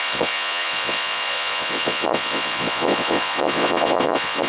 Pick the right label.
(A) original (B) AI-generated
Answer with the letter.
B